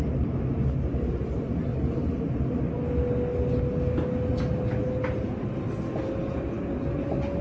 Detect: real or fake real